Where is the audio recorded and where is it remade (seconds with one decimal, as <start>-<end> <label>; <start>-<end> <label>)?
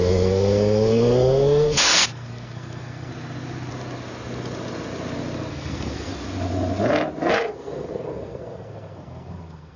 0.0-3.1 remade; 3.1-5.5 recorded; 5.5-6.1 remade; 6.1-7.3 recorded; 7.3-9.8 remade